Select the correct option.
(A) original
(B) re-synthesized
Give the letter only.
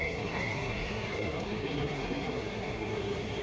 B